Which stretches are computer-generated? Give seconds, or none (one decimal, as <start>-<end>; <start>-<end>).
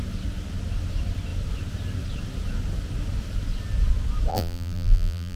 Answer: 4.3-5.4